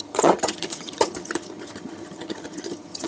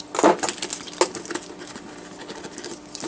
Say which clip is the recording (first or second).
second